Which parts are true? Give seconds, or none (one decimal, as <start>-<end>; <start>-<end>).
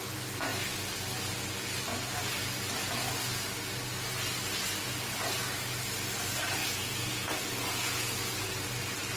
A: 0.0-6.6; 8.5-9.2